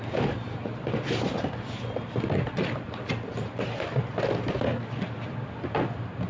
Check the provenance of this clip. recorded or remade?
recorded